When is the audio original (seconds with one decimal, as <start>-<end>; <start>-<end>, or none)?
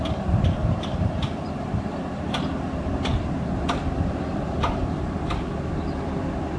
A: 0.0-0.6; 1.8-2.5; 5.1-6.6